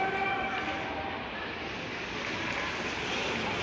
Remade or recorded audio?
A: recorded